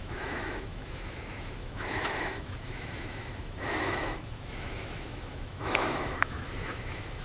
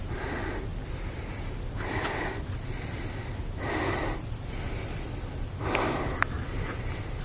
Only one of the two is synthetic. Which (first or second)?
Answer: first